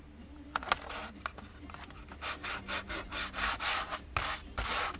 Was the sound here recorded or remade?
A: recorded